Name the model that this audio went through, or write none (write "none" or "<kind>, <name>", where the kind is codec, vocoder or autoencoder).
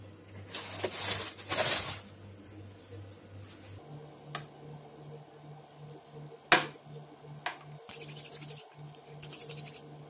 none